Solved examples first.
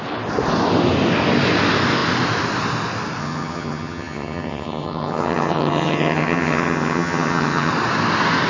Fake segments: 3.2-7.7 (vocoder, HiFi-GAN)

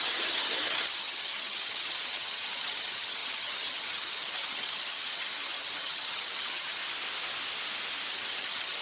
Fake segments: 0.0-6.8 (vocoder, HiFi-GAN); 8.1-8.8

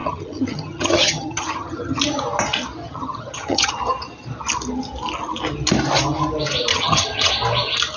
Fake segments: 0.0-2.0 (vocoder, HiFi-GAN); 2.8-3.7; 6.7-7.3

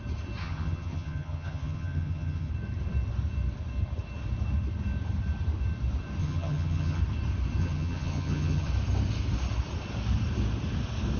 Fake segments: 0.4-2.5 (vocoder, HiFi-GAN); 6.2-7.0; 7.6-8.7